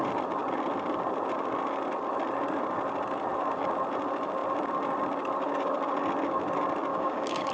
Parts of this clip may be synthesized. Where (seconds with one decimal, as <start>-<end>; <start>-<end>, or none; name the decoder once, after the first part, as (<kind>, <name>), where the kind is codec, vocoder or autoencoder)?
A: 6.9-7.5 (codec, DAC)